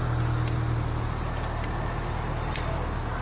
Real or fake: real